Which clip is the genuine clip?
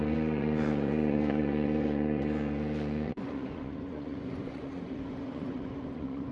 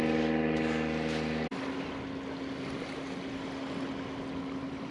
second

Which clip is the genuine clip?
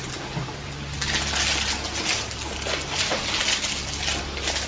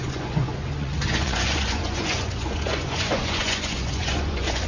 first